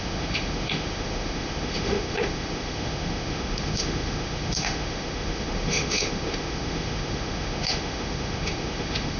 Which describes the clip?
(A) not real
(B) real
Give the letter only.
A